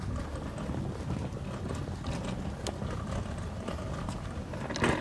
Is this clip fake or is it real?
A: real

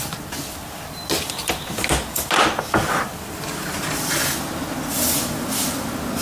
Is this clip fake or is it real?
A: real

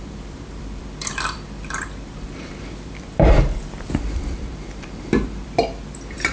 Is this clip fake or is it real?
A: fake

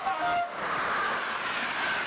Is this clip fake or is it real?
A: real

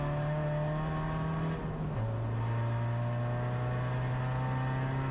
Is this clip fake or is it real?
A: real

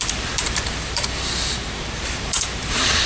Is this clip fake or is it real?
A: fake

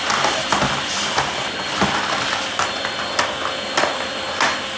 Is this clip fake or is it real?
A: real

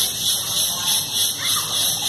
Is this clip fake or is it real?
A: real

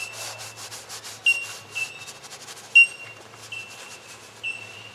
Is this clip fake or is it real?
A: real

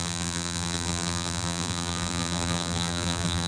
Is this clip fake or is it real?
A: fake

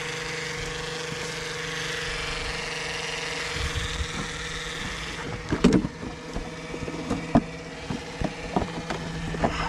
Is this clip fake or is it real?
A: real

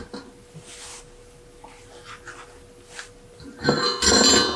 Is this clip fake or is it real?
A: real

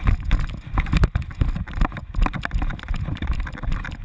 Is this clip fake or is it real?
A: real